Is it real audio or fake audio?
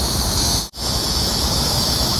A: fake